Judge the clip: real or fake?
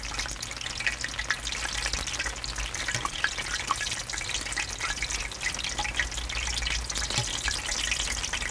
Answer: real